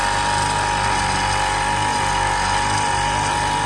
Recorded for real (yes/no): yes